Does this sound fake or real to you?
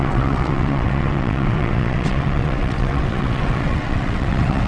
fake